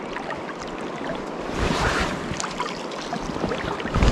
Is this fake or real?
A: real